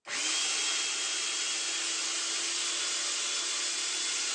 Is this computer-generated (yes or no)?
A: no